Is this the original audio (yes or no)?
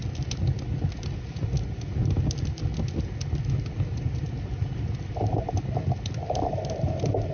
yes